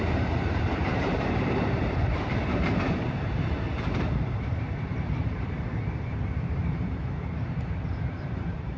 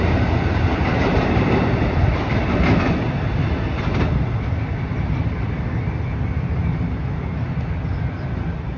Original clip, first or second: second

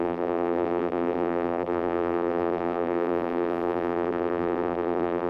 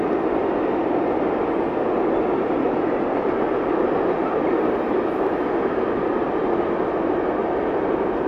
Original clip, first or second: second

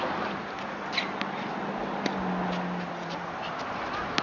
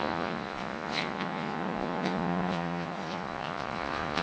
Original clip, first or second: first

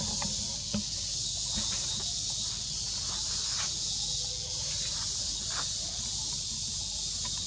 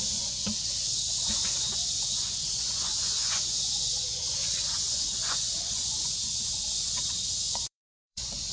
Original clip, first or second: first